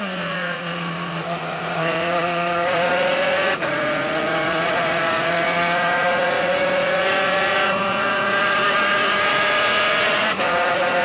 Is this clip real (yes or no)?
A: no